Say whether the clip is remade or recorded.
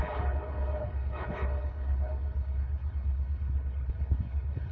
remade